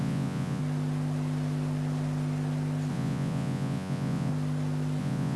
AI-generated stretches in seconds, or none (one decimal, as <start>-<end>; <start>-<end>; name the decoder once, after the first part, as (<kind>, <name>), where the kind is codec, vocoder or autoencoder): 0.0-0.6 (vocoder, Vocos); 2.9-4.3; 5.0-5.4